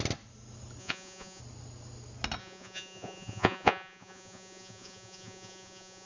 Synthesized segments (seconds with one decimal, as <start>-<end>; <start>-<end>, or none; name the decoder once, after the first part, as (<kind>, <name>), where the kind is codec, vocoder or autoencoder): 0.8-1.4 (vocoder, Vocos); 2.4-6.1